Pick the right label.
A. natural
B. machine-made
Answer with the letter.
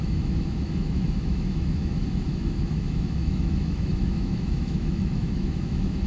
B